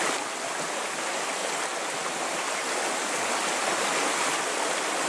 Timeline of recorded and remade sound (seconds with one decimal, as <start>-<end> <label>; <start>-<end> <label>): 0.0-5.1 recorded

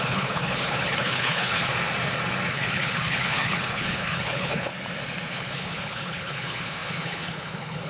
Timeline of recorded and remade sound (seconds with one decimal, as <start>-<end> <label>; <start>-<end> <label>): 0.0-1.7 remade; 1.7-2.5 recorded; 2.5-4.7 remade; 4.7-5.3 recorded; 5.3-7.9 remade

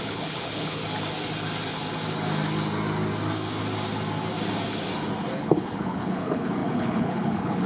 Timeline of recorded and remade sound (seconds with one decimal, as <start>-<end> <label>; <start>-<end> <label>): 0.0-0.8 remade; 0.8-5.3 recorded; 5.3-7.7 remade

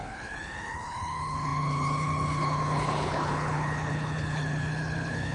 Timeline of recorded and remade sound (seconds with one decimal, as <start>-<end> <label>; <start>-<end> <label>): 0.0-5.3 remade

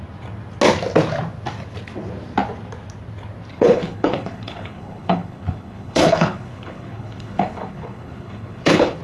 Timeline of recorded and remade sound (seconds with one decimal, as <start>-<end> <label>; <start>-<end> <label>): 0.0-3.5 recorded; 3.5-9.0 remade

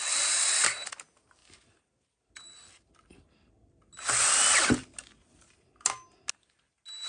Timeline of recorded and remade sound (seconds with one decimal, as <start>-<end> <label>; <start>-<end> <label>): 0.0-7.1 recorded

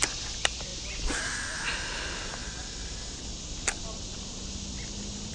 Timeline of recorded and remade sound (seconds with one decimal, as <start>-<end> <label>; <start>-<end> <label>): 0.0-5.3 recorded

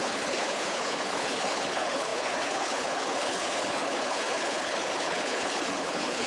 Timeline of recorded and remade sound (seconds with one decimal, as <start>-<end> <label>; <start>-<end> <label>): 0.0-6.3 remade